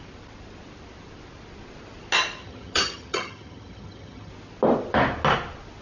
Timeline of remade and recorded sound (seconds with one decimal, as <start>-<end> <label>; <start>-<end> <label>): 0.0-2.4 recorded; 2.4-4.3 remade; 4.3-5.8 recorded